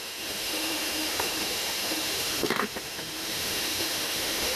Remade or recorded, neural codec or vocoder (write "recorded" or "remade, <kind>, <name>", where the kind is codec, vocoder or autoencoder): remade, autoencoder, DAC-VAE